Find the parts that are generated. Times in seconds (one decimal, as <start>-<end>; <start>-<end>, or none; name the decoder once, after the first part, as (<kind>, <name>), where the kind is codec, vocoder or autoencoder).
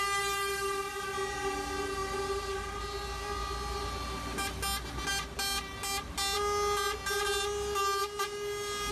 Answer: none